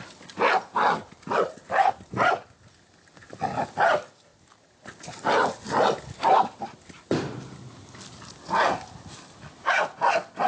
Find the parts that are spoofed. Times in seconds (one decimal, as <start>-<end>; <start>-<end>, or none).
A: none